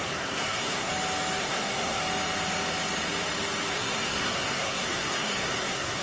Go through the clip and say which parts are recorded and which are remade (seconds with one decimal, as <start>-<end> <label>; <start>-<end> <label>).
0.0-0.9 remade; 0.9-1.4 recorded; 1.4-2.0 remade; 2.0-3.7 recorded; 3.7-6.0 remade